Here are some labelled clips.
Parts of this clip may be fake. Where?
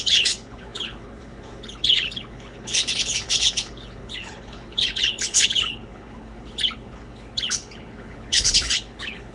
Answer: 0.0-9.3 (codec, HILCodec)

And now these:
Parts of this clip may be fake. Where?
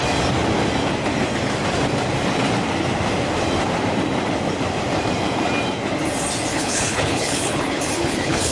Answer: 6.5-8.5 (codec, HILCodec)